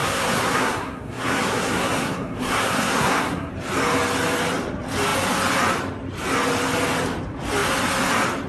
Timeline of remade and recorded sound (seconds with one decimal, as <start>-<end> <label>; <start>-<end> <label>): 0.0-3.5 remade; 3.5-8.5 recorded